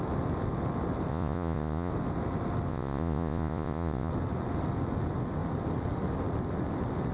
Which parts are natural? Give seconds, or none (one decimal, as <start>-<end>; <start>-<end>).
0.0-1.1; 1.9-2.7; 4.1-7.1